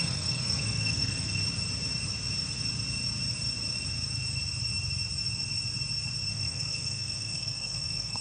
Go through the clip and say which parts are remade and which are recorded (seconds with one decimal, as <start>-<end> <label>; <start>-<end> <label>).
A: 0.0-1.4 remade; 1.4-6.3 recorded; 6.3-8.2 remade